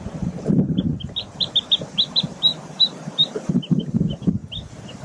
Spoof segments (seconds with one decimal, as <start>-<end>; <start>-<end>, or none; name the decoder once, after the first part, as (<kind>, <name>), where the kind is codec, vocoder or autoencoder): 0.0-4.4 (vocoder, BigVGAN v2)